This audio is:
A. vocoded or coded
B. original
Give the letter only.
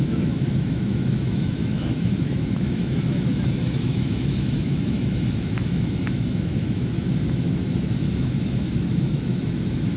A